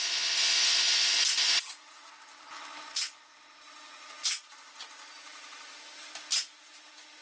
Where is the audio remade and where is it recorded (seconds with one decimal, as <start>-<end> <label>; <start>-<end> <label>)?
0.0-7.2 recorded

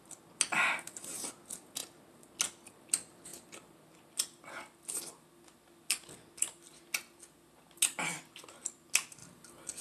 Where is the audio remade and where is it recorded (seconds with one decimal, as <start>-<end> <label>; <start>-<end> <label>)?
0.0-9.8 recorded

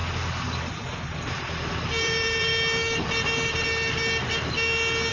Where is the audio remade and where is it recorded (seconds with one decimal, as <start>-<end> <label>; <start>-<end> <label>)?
0.0-1.2 recorded; 1.2-2.5 remade; 2.5-5.1 recorded

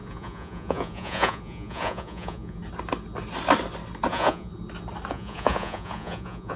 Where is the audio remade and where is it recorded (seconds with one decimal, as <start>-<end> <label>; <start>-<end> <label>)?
0.0-2.6 remade; 2.6-4.1 recorded; 4.1-4.5 remade; 4.5-5.1 recorded; 5.1-6.6 remade

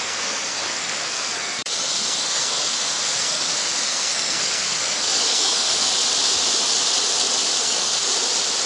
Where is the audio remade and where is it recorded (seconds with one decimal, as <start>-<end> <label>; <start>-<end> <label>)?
0.0-5.9 remade; 5.9-7.6 recorded; 7.6-8.1 remade; 8.1-8.7 recorded

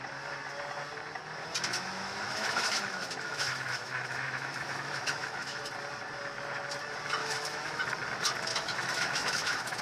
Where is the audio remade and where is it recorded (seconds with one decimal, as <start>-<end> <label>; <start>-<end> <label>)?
0.0-1.7 recorded; 1.7-5.6 remade; 5.6-7.2 recorded; 7.2-7.8 remade; 7.8-8.5 recorded; 8.5-9.8 remade